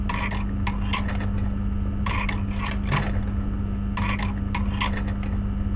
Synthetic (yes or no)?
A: no